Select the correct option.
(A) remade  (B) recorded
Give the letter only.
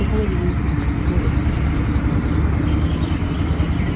B